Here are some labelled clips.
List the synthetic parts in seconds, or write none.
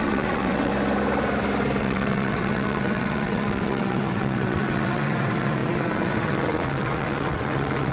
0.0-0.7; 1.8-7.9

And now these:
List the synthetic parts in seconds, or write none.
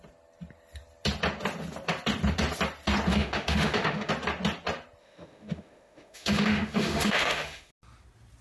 3.1-4.1; 5.0-7.7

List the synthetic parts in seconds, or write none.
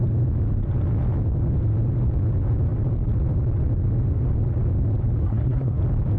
5.2-5.8